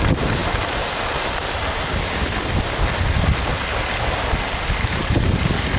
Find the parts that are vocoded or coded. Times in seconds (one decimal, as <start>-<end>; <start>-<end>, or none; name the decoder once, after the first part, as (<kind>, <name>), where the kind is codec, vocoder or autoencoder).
5.0-5.8 (codec, DAC)